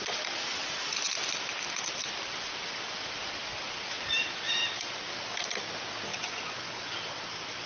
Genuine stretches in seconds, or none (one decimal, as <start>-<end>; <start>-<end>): 0.0-6.1; 6.9-7.7